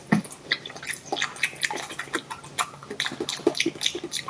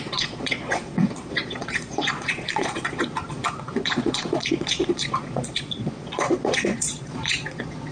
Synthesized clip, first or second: second